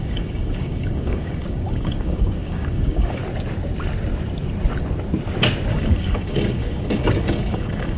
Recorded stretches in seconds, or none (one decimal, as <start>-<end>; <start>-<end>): 3.2-5.7

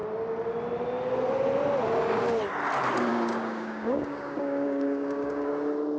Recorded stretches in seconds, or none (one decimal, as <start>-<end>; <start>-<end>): 0.0-3.1; 5.5-6.0

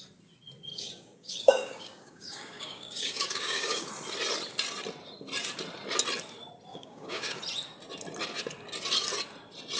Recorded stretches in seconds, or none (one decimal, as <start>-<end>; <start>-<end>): 0.0-0.7; 3.9-6.7; 7.4-9.8

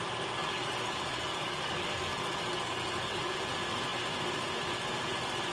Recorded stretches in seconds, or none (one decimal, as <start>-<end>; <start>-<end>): 0.0-0.4; 3.2-5.5

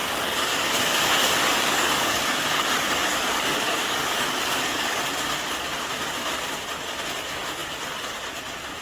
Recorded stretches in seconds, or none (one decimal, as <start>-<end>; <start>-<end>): 5.0-8.8